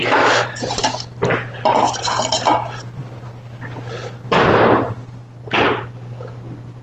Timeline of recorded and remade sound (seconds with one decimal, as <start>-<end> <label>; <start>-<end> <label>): 0.0-6.8 recorded